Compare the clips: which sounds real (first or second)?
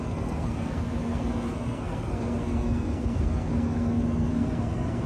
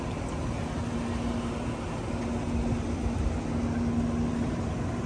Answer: second